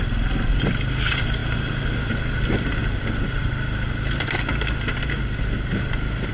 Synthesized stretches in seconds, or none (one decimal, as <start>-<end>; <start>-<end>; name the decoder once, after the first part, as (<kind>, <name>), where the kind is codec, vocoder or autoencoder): none